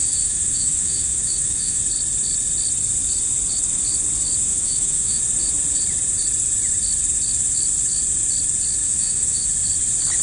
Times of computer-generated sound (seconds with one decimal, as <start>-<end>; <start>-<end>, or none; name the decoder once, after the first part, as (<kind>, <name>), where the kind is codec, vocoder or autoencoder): 0.0-1.8 (autoencoder, DAC-VAE); 4.5-5.2; 8.8-9.5